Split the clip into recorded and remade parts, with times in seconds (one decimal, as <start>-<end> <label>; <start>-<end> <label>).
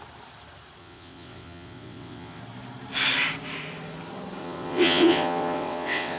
0.0-0.8 recorded; 0.8-2.4 remade; 2.4-4.4 recorded; 4.4-6.2 remade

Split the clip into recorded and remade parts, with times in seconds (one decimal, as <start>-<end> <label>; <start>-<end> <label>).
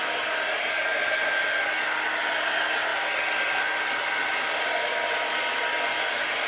0.0-6.5 recorded